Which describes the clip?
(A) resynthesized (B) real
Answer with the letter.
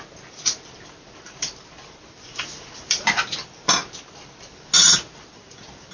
B